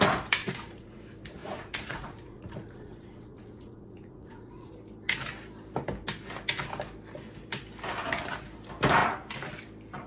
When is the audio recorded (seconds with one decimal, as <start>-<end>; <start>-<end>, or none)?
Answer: 0.0-0.4; 1.0-1.4; 4.7-10.1